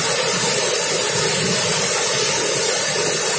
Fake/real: real